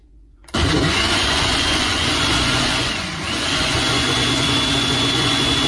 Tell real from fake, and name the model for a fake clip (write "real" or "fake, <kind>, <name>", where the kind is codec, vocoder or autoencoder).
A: fake, vocoder, Vocos